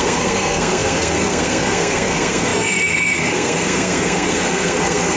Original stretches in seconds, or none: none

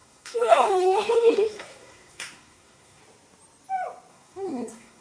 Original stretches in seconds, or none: 3.0-4.1

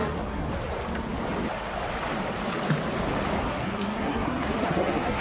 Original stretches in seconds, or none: 0.5-3.5